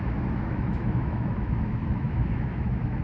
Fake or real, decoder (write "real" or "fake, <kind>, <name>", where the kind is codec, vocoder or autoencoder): fake, autoencoder, DAC-VAE